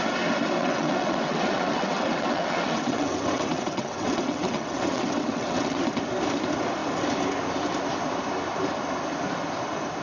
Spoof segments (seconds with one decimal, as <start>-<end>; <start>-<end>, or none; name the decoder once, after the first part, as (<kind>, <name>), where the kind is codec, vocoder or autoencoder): 0.6-5.8 (vocoder, WaveNeXt)